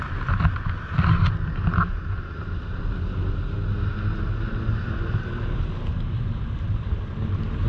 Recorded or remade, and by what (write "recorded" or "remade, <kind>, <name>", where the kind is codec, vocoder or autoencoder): recorded